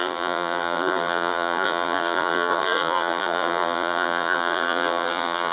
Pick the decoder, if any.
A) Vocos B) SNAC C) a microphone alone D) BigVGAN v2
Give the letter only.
D